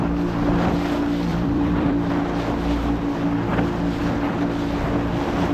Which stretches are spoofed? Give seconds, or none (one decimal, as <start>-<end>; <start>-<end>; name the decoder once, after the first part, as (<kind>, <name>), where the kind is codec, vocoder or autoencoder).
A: 1.3-2.1 (vocoder, BigVGAN v2)